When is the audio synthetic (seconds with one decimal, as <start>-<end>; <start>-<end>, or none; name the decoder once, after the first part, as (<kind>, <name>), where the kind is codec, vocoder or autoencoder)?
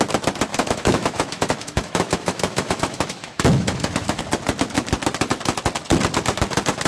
0.5-4.2 (autoencoder, DAC-VAE)